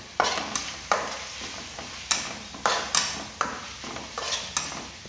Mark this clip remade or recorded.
recorded